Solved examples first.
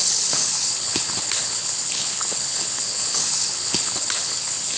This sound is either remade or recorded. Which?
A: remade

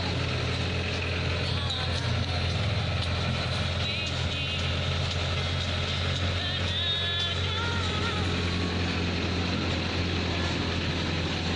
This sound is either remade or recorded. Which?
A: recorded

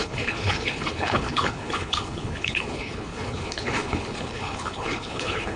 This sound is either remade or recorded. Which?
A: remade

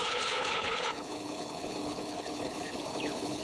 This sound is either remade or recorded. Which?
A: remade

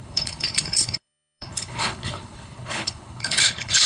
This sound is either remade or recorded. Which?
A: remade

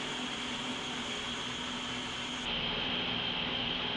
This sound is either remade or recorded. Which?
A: recorded